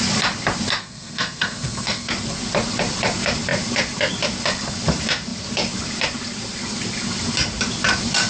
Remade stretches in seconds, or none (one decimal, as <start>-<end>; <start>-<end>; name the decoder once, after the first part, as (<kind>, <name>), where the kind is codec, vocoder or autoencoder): 0.8-2.1 (codec, SNAC)